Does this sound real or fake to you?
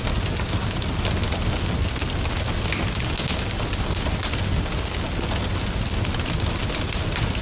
real